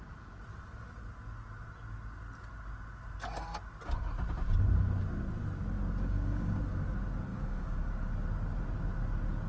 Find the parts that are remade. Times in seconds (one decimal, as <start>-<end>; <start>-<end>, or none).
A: 6.0-6.6; 7.3-7.9